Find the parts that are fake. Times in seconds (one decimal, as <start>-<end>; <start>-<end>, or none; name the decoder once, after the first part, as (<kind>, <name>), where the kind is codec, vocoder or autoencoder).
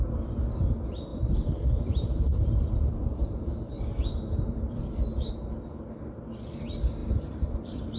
1.1-5.3 (vocoder, BigVGAN v2); 7.0-8.0